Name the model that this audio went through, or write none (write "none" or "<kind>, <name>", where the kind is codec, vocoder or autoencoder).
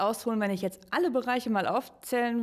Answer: none